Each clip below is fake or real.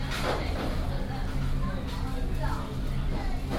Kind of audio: real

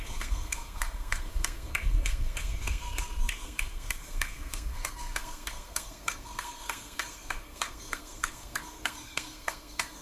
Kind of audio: fake